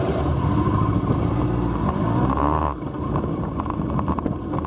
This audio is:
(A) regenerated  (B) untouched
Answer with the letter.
B